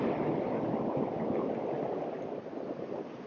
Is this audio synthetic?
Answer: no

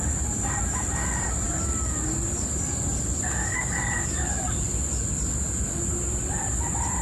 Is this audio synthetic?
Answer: no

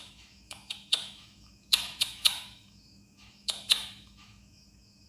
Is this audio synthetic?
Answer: yes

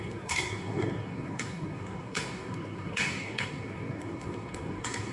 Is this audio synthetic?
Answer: yes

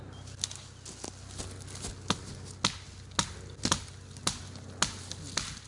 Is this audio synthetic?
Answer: no